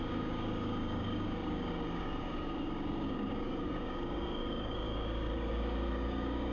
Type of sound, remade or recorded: remade